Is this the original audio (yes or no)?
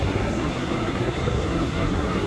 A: no